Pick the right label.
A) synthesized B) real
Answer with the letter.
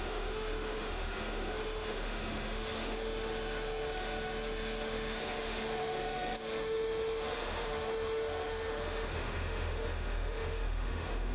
A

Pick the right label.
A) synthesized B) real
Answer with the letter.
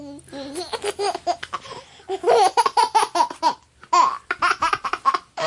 B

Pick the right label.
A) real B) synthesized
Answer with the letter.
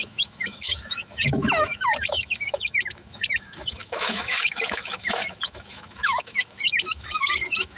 B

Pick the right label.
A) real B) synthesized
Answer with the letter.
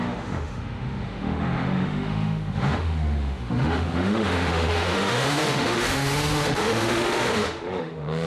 B